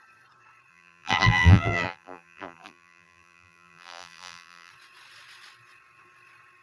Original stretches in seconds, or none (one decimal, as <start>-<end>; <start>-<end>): 0.0-0.7; 4.7-6.6